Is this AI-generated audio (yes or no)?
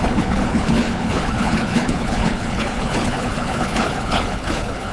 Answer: yes